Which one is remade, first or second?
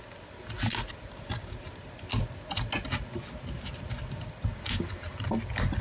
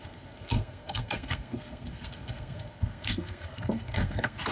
second